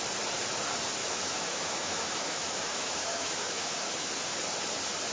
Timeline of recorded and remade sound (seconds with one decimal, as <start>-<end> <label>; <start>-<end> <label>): 0.0-1.0 recorded; 1.0-4.1 remade; 4.1-5.1 recorded